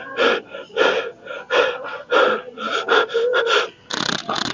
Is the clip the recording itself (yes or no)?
yes